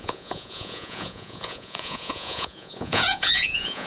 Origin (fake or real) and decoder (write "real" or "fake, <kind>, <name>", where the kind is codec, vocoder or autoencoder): fake, vocoder, Vocos